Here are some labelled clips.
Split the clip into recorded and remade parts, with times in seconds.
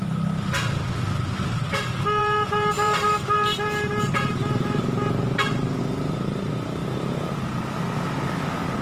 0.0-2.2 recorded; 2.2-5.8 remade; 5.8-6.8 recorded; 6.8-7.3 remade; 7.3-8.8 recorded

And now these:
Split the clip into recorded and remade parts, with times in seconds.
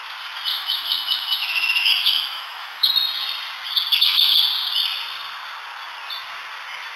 0.0-0.5 recorded; 0.5-2.9 remade; 2.9-3.9 recorded; 3.9-4.4 remade; 4.4-7.0 recorded